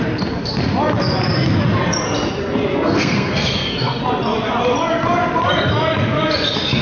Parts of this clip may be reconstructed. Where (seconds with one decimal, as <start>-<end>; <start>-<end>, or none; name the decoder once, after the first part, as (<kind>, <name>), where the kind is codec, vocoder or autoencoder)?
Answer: 2.7-4.0 (codec, SNAC)